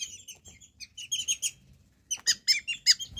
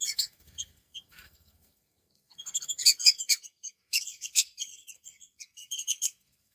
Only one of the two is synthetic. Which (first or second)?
second